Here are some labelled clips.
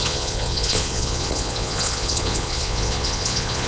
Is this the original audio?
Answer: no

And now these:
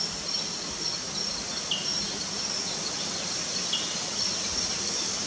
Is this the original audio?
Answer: yes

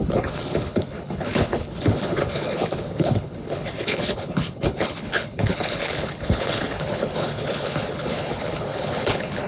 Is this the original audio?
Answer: no